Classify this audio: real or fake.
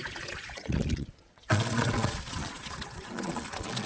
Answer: fake